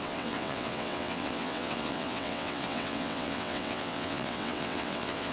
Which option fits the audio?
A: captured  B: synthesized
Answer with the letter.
B